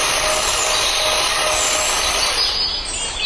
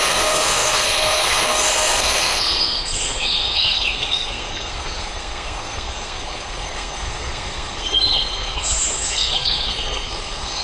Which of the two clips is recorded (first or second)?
first